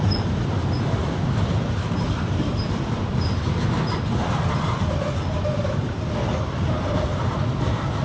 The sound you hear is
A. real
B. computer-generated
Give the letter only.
A